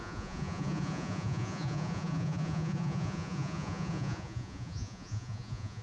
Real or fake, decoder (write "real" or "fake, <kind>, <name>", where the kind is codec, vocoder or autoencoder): fake, vocoder, Vocos